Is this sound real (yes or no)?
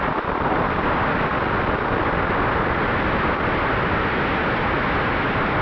yes